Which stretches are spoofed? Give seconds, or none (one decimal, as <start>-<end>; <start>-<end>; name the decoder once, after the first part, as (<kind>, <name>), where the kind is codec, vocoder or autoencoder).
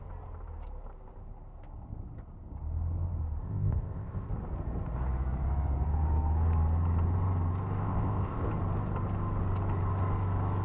3.4-4.3 (codec, ZipCodec); 7.8-8.5